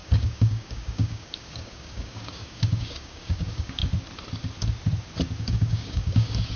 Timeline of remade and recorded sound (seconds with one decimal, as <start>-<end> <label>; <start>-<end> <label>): 0.0-3.8 remade; 3.8-5.4 recorded; 5.4-6.6 remade